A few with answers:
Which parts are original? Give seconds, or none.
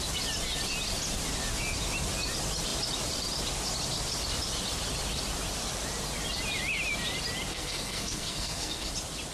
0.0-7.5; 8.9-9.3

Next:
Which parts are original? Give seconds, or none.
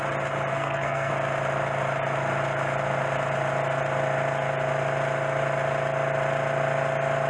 0.0-0.5; 1.1-7.3